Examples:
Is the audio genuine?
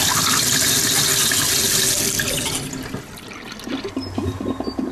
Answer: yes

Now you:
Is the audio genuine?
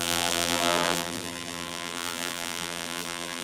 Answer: no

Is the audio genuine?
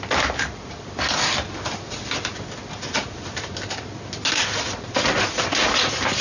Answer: yes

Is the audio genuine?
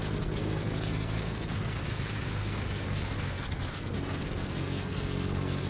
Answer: no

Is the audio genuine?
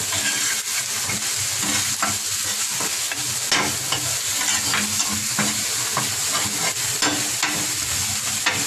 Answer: yes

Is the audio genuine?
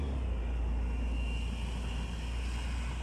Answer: yes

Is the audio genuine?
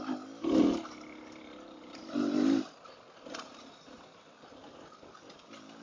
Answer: yes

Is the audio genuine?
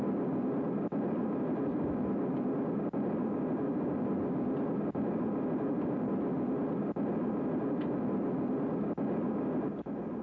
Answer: yes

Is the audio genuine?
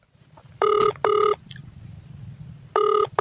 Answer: yes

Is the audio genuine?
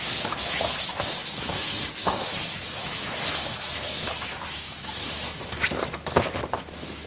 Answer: no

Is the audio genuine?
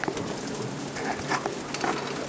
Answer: yes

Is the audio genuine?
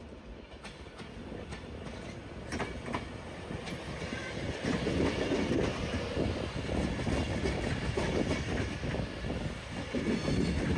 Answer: yes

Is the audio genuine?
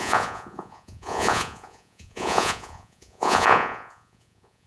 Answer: no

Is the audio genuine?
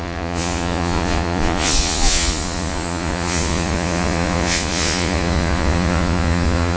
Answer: no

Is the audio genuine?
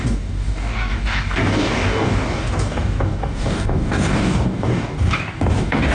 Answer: no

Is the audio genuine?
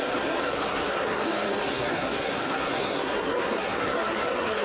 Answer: no